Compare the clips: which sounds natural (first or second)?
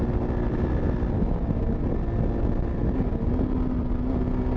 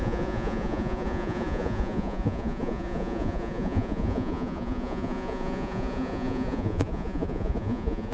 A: first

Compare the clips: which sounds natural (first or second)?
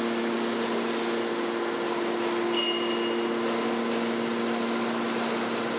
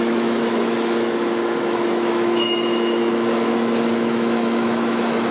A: first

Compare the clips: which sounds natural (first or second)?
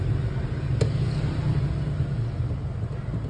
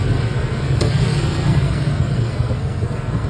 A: first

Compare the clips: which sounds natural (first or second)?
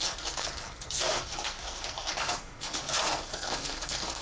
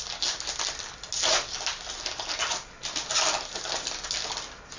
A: second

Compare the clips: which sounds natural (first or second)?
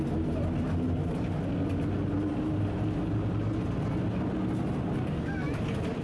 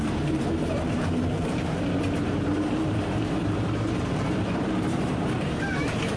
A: first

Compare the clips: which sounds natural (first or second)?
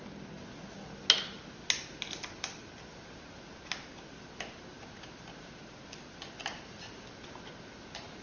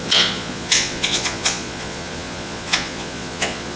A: first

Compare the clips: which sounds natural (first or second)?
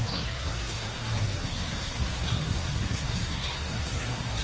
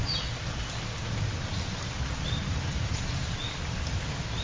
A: second